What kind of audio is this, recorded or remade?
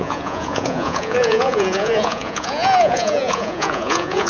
remade